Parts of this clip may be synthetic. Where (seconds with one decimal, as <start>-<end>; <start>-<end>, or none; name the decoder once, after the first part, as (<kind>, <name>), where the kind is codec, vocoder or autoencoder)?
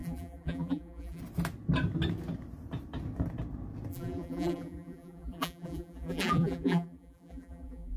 0.0-1.2 (vocoder, BigVGAN v2); 3.9-8.0